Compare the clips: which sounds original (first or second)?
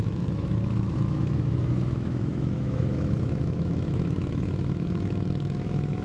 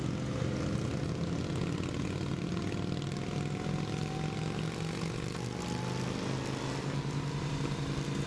second